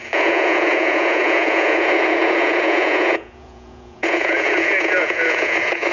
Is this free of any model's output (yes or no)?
no